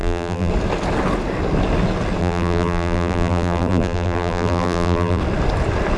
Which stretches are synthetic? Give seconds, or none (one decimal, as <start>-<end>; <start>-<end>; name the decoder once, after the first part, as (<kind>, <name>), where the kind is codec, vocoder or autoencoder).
0.0-0.5 (vocoder, BigVGAN v2); 2.2-5.2